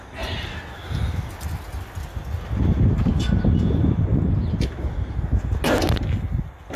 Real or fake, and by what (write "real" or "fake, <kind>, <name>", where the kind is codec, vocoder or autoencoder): real